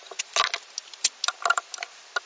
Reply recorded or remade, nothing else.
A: recorded